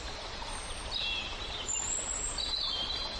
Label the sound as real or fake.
real